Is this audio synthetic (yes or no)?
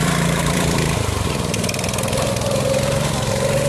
yes